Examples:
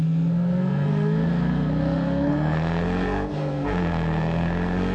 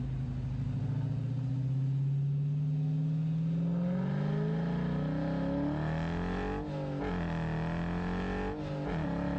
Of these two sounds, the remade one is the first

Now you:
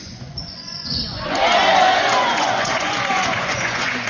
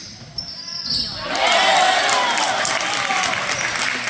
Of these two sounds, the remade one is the first